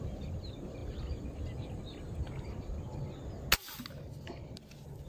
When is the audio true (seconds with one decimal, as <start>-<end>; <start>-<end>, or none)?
0.0-5.1

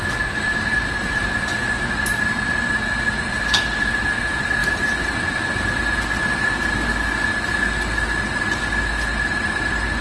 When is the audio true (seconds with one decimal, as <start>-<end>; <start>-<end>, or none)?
0.0-10.0

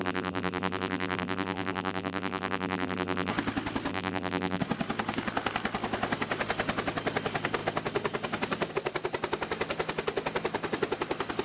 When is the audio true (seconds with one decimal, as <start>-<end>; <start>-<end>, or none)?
3.3-3.9; 4.6-11.4

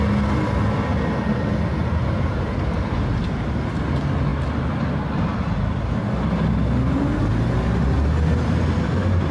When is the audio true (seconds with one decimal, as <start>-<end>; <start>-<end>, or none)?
0.0-1.8; 3.7-9.3

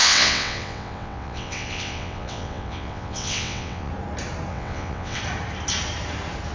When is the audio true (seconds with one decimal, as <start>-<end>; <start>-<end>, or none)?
3.9-4.5; 5.2-6.5